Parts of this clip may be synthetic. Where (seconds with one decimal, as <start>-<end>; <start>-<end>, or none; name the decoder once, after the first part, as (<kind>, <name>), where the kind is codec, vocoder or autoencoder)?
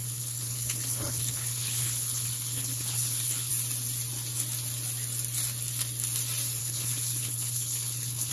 0.0-3.5 (codec, HILCodec); 6.6-8.3